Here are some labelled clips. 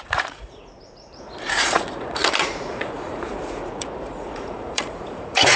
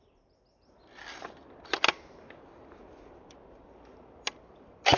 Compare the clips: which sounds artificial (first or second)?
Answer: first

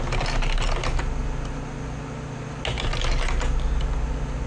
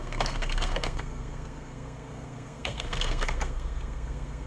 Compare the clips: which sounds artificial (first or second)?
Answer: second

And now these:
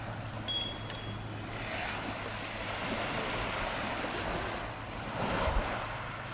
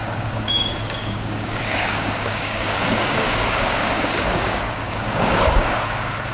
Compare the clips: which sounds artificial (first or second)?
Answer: second